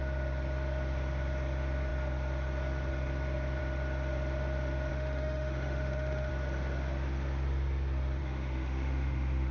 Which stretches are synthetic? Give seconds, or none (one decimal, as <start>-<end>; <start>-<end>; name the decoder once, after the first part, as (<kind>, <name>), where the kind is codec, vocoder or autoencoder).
4.9-6.3 (autoencoder, DAC-VAE); 8.2-9.5